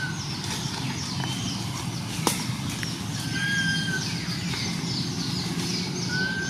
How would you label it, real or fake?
real